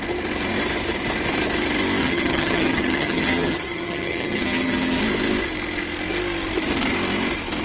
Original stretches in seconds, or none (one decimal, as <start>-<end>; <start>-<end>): 0.0-2.0; 5.0-7.6